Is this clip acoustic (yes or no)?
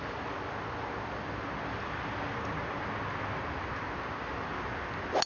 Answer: yes